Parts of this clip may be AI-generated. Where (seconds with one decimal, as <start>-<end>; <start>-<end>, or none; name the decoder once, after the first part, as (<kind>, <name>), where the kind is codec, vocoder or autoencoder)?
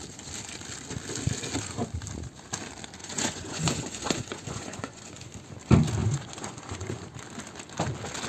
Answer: 3.0-5.3 (vocoder, Vocos); 6.0-7.2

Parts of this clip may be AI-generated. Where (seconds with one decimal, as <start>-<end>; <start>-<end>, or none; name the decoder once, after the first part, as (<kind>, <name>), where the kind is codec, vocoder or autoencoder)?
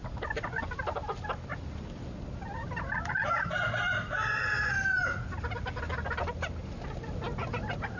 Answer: none